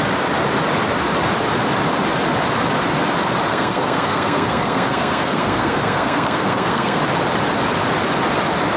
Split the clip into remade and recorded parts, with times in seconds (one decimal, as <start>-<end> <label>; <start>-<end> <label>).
0.0-3.5 recorded; 3.5-7.0 remade; 7.0-8.8 recorded

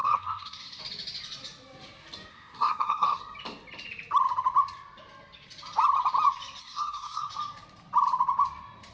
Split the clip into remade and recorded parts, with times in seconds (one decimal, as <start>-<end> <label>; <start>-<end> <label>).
0.0-0.8 remade; 0.8-2.3 recorded; 2.3-3.2 remade; 3.2-6.6 recorded; 6.6-7.3 remade; 7.3-8.9 recorded

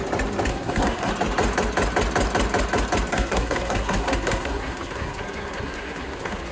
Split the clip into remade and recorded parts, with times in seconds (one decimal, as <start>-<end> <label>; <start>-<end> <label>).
0.0-0.5 recorded; 0.5-1.1 remade; 1.1-3.1 recorded; 3.1-6.5 remade

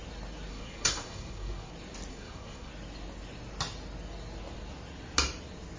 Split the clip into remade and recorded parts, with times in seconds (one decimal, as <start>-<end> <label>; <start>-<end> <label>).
0.0-0.5 recorded; 0.5-1.7 remade; 1.7-2.1 recorded; 2.1-2.7 remade; 2.7-5.8 recorded

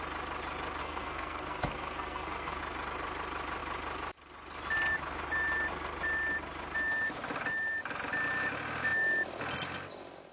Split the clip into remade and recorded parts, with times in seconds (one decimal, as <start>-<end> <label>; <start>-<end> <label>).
0.0-0.8 recorded; 0.8-2.6 remade; 2.6-10.3 recorded